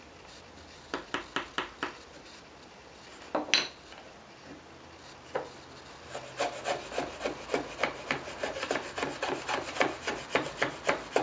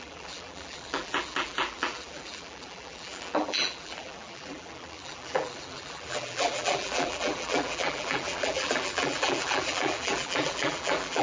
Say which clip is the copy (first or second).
second